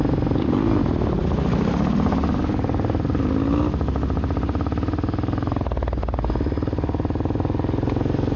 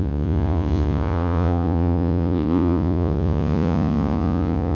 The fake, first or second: second